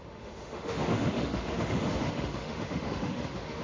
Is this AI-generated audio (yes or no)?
yes